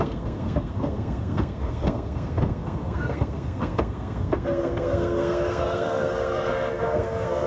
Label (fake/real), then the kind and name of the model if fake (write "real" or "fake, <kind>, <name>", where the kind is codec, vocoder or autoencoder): fake, codec, SNAC